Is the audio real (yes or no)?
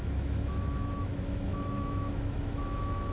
no